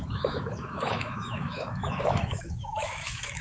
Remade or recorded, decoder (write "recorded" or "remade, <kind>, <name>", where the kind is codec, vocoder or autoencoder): remade, autoencoder, DAC-VAE